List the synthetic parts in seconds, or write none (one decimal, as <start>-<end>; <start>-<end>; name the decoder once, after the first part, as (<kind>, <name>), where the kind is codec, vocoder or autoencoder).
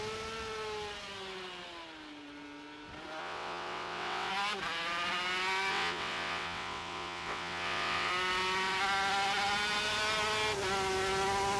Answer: 3.2-4.3 (vocoder, WaveNeXt); 5.7-8.1